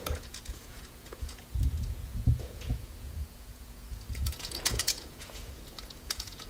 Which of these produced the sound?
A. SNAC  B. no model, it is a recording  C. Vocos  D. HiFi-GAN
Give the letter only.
C